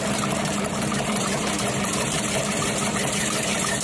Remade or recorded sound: remade